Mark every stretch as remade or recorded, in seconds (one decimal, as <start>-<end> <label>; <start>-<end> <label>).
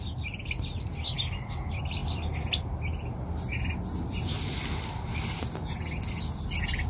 0.0-6.9 recorded